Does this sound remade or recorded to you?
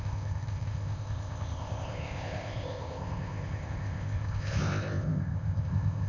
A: remade